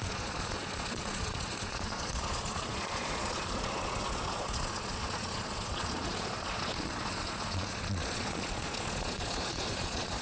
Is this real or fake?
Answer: fake